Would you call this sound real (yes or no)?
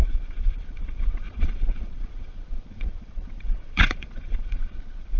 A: no